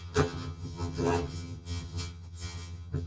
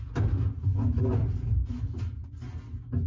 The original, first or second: second